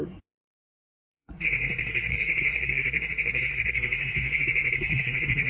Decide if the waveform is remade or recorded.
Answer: remade